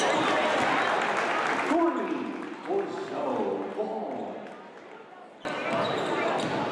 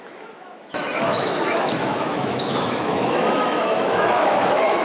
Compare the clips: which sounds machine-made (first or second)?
second